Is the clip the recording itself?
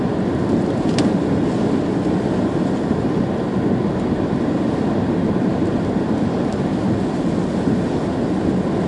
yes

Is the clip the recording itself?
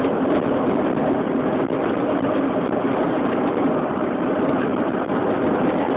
yes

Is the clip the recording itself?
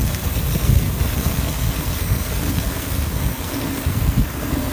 no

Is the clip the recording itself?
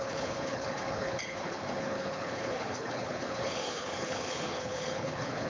no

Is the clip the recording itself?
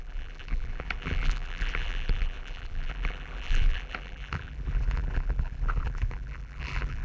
no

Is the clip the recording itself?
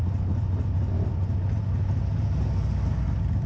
yes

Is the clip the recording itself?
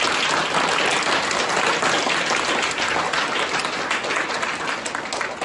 yes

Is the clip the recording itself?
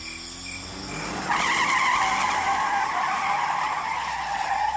yes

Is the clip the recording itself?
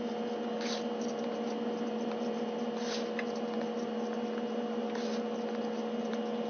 yes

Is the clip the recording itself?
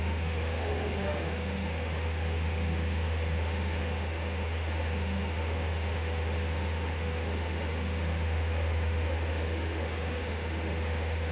no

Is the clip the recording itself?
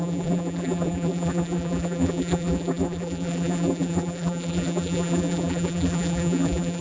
no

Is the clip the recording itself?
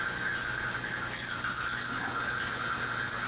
yes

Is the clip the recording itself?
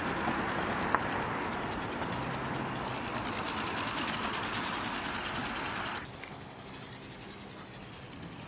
yes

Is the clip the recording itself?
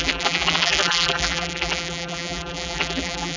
no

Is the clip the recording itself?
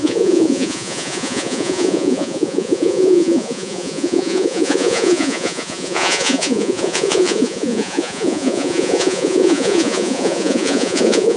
no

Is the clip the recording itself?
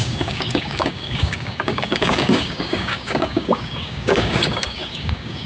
no